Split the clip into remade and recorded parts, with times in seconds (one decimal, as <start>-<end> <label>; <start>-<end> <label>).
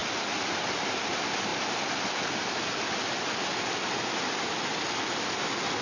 0.0-5.8 recorded